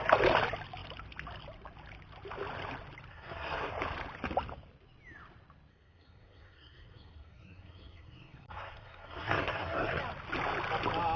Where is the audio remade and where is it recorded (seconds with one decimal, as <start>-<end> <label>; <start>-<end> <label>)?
0.0-3.1 recorded; 3.1-3.7 remade; 3.7-5.7 recorded; 5.7-10.0 remade; 10.0-11.2 recorded